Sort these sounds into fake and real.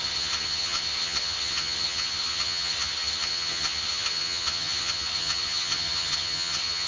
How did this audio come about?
fake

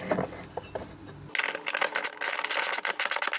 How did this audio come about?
real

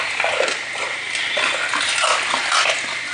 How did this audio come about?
real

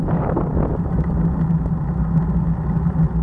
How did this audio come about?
real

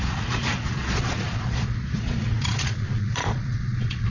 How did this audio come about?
fake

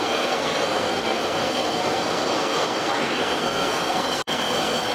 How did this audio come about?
fake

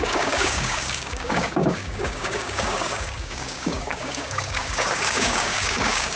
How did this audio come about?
fake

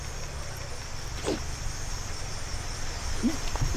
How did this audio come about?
real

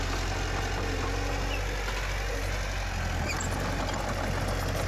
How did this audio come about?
real